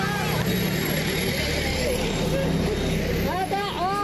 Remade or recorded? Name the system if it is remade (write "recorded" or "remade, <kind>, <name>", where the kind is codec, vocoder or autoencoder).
recorded